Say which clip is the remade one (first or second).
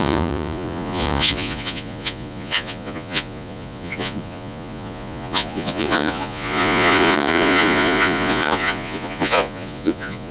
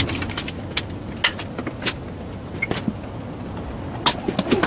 first